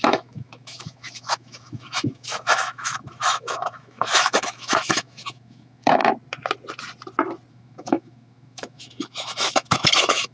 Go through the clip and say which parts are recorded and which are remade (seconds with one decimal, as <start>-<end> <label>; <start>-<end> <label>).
0.0-6.0 remade; 6.0-7.5 recorded; 7.5-10.3 remade